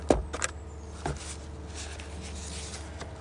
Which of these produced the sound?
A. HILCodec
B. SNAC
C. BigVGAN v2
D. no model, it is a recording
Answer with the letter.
D